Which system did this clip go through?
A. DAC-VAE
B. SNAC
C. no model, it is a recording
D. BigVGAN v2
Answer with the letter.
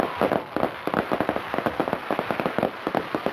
C